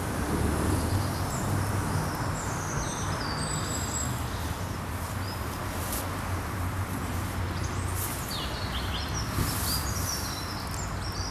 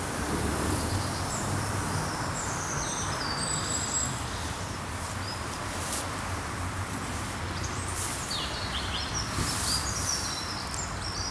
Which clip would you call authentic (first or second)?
first